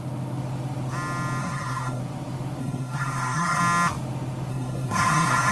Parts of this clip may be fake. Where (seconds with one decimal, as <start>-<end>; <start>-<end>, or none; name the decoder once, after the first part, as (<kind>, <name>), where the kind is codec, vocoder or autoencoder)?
1.4-2.0 (codec, SNAC); 2.6-3.6; 4.5-5.5